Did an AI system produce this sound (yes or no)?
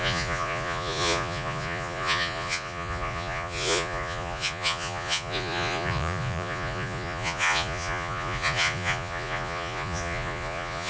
yes